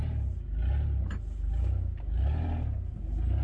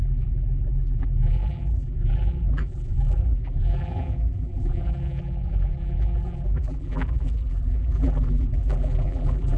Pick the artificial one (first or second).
second